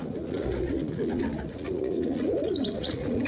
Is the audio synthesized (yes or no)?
yes